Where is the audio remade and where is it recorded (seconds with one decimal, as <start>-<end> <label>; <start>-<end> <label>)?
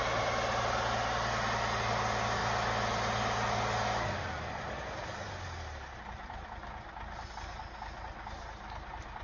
0.0-9.2 recorded